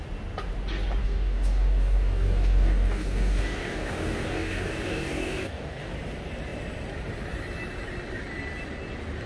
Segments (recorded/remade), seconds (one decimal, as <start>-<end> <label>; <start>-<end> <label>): 0.0-1.0 recorded; 1.0-5.9 remade; 5.9-9.3 recorded